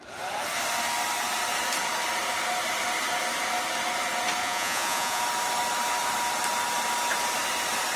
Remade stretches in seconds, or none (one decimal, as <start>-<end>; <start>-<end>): 4.4-5.2